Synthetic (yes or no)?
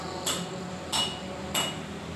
no